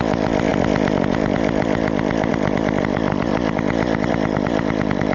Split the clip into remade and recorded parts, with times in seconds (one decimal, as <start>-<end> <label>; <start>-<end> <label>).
0.0-5.1 recorded